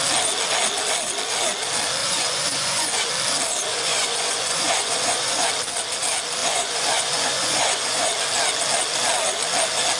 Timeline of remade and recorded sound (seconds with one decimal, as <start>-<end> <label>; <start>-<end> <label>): 0.0-2.0 recorded; 2.0-3.1 remade; 3.1-3.7 recorded; 3.7-5.5 remade; 5.5-6.4 recorded; 6.4-8.1 remade; 8.1-10.0 recorded